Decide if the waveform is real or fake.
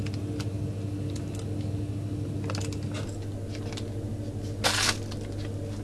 real